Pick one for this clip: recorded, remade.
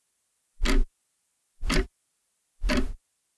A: recorded